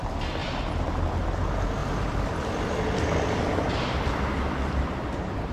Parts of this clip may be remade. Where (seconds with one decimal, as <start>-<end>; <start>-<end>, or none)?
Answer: 0.4-1.4; 1.8-5.1